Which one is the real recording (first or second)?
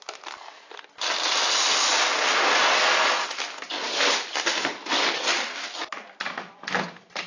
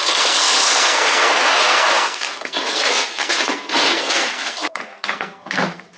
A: first